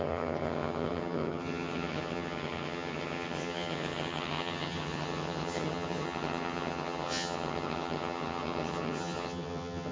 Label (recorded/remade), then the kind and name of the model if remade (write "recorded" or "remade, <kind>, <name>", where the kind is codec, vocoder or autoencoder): remade, vocoder, HiFi-GAN